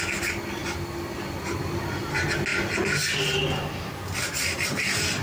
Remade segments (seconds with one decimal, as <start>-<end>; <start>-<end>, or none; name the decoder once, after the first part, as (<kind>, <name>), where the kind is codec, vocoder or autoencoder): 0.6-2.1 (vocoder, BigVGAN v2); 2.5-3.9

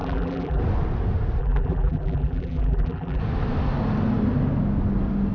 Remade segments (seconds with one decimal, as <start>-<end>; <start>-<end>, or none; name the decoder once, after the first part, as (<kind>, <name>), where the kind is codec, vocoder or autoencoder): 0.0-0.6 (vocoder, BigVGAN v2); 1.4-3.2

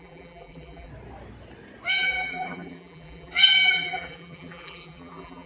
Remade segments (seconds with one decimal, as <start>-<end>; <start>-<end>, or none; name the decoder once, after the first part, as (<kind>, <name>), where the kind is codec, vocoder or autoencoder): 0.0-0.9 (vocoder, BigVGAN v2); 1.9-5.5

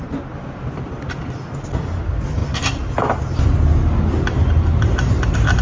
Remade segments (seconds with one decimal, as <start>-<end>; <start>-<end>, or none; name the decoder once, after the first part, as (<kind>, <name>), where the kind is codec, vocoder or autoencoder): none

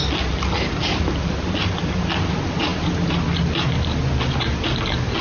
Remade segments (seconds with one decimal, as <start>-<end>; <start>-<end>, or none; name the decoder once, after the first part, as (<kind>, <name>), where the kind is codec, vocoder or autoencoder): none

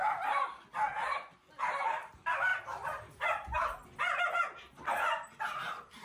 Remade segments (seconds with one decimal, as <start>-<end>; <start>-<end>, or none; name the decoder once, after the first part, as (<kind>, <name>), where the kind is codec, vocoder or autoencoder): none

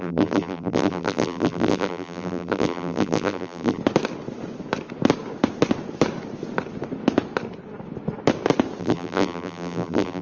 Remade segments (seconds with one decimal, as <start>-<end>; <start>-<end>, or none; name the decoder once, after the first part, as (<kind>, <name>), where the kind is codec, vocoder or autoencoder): 0.0-3.8 (vocoder, BigVGAN v2); 8.8-10.2